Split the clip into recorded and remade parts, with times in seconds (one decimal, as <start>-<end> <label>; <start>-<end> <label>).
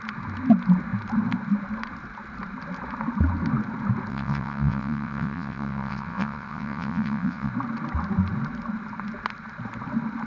0.0-4.1 recorded; 4.1-7.5 remade; 7.5-10.3 recorded